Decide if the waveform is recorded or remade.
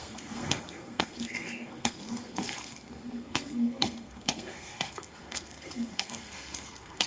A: remade